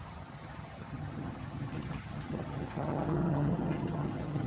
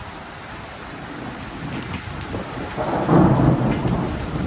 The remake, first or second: first